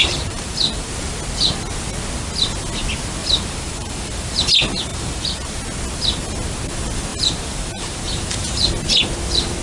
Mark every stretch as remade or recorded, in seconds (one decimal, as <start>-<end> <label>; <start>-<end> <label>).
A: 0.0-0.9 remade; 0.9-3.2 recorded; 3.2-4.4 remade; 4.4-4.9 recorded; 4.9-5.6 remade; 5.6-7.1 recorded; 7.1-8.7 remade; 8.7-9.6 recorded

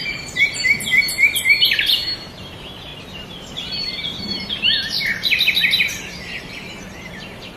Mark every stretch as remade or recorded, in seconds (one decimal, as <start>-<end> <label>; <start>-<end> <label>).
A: 0.0-0.9 remade; 0.9-2.4 recorded; 2.4-2.9 remade; 2.9-5.1 recorded; 5.1-7.6 remade

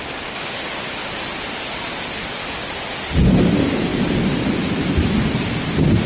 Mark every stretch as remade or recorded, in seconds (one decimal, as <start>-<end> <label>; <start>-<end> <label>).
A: 0.0-6.1 remade

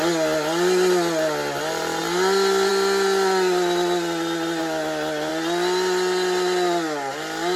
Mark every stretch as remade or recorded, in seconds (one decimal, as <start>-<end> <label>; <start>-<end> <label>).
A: 0.0-7.6 recorded